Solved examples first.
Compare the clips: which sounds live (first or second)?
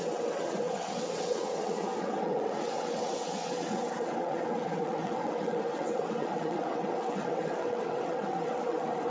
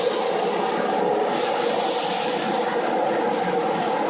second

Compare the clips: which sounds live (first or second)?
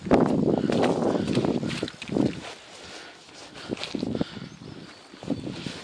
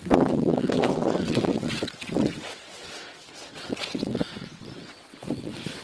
first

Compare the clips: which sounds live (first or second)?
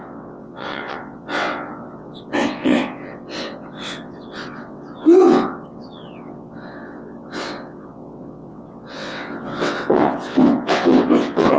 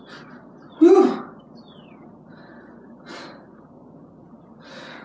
second